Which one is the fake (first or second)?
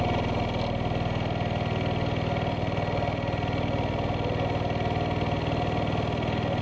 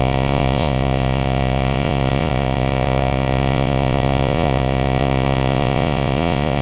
second